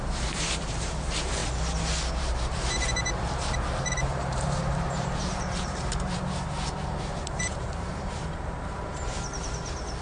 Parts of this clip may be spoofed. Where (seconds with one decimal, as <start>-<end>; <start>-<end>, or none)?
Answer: 0.0-1.4; 2.1-10.0